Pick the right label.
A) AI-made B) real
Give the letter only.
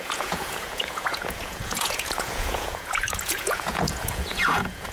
A